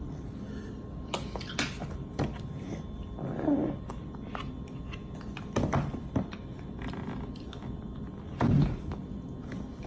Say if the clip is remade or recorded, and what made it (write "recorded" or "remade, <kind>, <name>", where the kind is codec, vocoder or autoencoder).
recorded